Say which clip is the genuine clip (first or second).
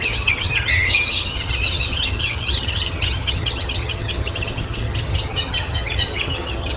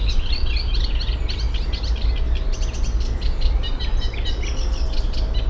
second